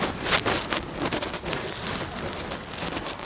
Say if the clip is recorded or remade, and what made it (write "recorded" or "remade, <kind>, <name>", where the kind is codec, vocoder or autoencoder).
recorded